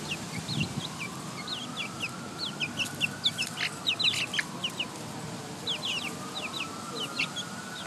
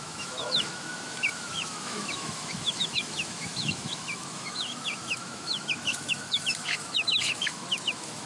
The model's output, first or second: second